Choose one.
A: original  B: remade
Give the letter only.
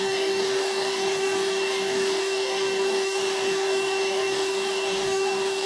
B